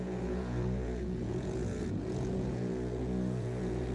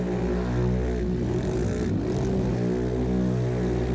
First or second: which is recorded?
second